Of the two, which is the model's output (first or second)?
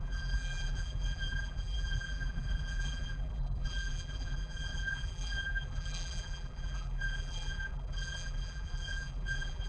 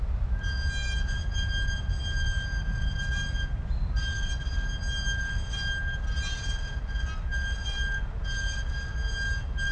first